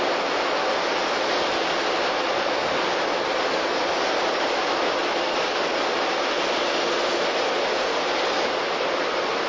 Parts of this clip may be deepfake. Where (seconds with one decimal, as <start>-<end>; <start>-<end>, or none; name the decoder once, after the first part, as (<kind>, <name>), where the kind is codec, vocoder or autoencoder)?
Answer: 2.6-3.5 (vocoder, BigVGAN v2); 5.0-6.4

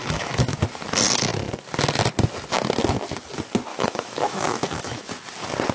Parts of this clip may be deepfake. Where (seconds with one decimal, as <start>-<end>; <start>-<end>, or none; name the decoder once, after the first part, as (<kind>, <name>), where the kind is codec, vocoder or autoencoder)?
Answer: 0.0-0.6 (autoencoder, DAC-VAE); 3.7-5.1

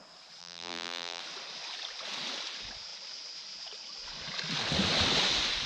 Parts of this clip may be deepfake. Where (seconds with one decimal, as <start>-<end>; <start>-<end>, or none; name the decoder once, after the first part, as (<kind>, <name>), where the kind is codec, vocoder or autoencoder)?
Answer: 0.4-1.2 (vocoder, BigVGAN v2)

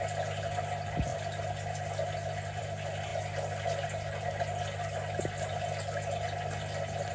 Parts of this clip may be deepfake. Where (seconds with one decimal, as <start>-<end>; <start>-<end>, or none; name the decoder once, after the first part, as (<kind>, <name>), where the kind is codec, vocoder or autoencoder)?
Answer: none